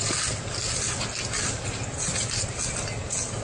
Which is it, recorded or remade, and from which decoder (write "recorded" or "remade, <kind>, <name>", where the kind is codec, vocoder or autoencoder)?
recorded